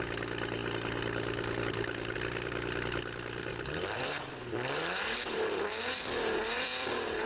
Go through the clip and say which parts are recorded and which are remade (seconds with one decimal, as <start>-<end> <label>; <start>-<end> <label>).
0.0-3.5 recorded; 3.5-7.3 remade